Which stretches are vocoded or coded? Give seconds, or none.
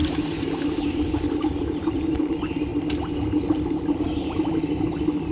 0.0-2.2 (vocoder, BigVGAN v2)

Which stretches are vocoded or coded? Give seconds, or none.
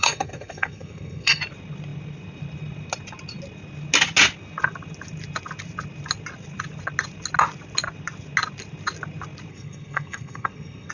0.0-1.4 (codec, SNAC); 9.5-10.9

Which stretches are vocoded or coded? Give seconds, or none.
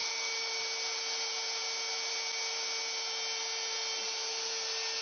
0.0-0.6 (autoencoder, DAC-VAE)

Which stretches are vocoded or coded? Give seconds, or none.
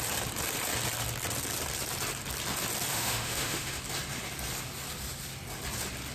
2.9-3.8 (autoencoder, DAC-VAE)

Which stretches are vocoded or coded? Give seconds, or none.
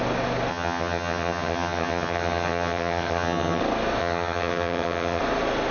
0.5-3.6 (vocoder, HiFi-GAN); 4.0-5.2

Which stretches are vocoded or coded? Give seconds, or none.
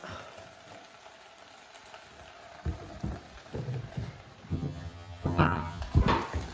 4.5-5.8 (vocoder, HiFi-GAN)